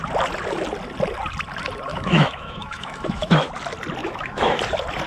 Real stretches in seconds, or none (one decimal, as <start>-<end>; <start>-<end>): 0.0-1.9; 3.5-4.0; 4.6-5.1